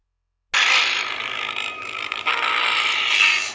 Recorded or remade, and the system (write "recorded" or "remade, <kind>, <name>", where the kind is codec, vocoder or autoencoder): recorded